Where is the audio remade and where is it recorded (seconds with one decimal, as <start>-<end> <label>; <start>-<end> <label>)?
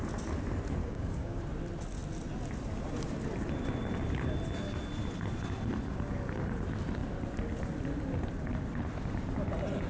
0.0-0.8 recorded; 0.8-1.4 remade; 1.4-9.9 recorded